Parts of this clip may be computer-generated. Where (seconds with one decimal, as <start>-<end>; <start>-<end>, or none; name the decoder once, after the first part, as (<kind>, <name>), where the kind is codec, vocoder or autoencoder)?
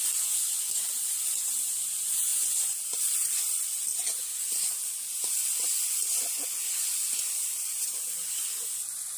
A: 0.0-2.3 (vocoder, BigVGAN v2); 3.4-3.9; 5.9-9.2